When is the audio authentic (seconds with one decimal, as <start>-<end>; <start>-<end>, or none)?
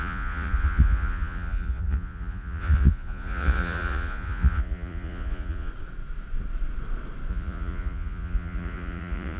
5.7-7.3